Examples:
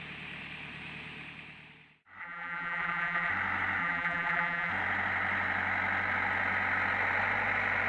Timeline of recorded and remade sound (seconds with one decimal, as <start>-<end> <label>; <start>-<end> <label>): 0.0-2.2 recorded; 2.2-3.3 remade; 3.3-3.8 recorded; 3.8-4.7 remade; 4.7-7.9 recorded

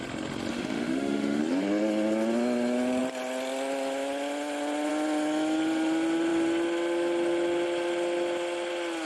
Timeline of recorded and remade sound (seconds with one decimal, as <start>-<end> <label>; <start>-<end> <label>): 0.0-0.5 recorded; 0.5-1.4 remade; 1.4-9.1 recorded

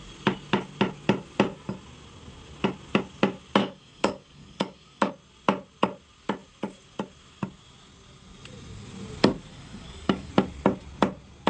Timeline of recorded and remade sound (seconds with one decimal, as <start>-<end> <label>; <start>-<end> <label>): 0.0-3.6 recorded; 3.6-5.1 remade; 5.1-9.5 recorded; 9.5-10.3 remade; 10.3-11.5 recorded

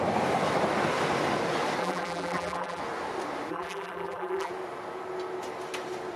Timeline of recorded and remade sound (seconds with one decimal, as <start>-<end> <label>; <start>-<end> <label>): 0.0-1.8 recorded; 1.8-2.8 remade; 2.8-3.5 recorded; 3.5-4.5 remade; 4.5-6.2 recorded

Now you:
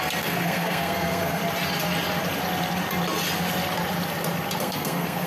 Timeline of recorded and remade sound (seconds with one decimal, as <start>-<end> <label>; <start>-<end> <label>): 0.0-1.4 remade; 1.4-4.6 recorded; 4.6-5.3 remade

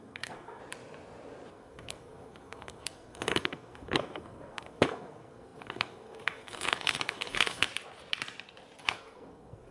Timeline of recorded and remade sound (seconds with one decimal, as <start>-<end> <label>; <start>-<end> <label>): 0.0-0.6 remade; 0.6-1.5 recorded; 1.5-7.7 remade; 7.7-8.8 recorded; 8.8-9.7 remade

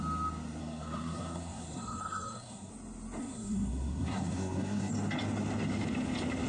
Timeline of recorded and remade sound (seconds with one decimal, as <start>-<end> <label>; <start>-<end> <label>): 0.0-0.6 recorded; 0.6-2.7 remade; 2.7-3.2 recorded; 3.2-4.9 remade; 4.9-6.5 recorded